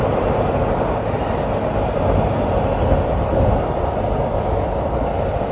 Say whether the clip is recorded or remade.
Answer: recorded